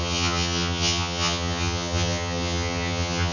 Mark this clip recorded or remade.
remade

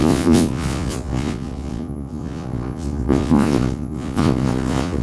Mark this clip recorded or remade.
remade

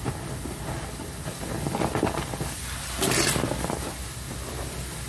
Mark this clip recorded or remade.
recorded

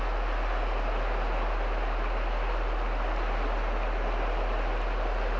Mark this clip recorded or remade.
recorded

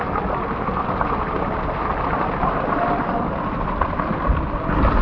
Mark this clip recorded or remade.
remade